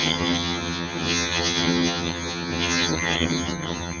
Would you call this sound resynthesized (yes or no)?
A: yes